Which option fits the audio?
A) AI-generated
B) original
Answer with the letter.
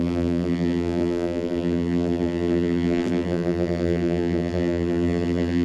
A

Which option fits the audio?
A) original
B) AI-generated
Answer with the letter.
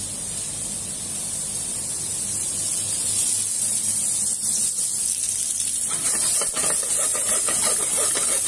B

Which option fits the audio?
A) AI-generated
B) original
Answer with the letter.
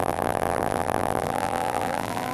A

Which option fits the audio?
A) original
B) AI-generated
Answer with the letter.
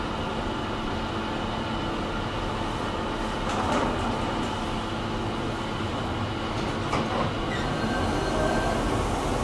A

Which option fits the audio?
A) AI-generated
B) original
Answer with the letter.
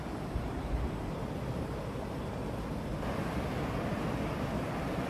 B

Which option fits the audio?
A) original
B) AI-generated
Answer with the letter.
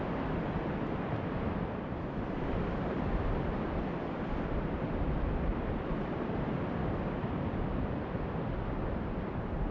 B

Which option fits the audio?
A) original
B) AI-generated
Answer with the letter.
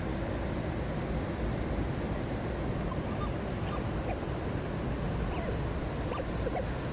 A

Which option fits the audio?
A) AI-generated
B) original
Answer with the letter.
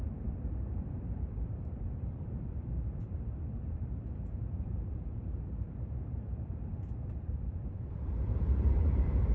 A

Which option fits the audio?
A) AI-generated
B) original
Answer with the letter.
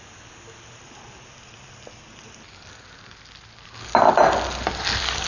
B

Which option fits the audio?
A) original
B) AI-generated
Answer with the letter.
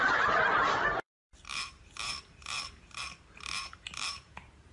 B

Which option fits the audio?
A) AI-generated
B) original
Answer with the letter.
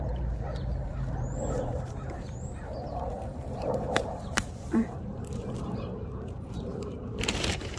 A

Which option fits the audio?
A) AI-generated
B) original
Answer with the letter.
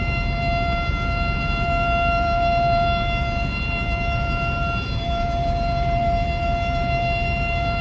A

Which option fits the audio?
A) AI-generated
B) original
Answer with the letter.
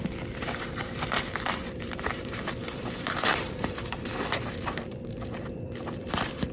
A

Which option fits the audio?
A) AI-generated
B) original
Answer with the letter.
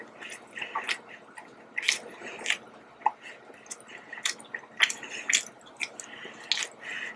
B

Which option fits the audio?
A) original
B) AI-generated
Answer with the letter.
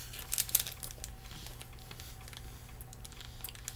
A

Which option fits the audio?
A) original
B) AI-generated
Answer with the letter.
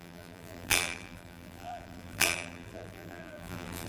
B